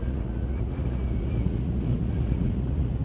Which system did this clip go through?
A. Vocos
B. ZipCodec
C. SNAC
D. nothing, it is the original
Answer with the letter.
A